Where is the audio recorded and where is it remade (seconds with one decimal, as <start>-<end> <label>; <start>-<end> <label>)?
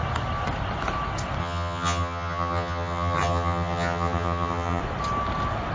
0.0-1.4 recorded; 1.4-4.8 remade; 4.8-5.7 recorded